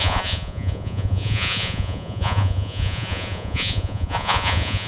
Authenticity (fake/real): fake